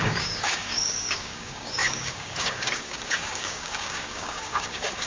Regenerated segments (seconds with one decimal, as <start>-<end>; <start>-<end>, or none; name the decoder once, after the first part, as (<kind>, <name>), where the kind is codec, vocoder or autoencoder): 0.0-5.1 (codec, DAC)